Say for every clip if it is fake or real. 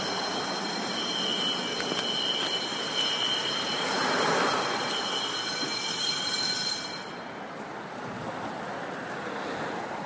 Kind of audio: real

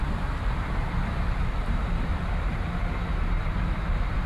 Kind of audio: fake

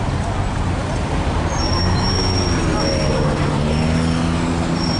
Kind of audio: real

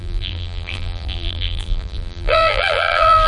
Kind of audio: fake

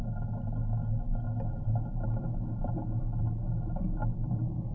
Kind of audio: real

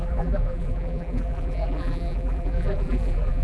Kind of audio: fake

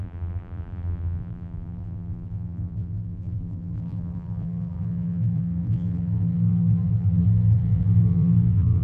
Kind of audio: fake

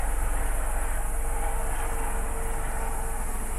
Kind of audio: real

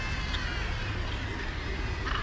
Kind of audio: real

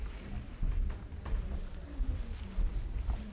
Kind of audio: real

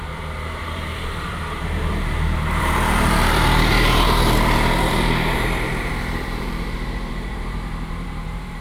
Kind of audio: fake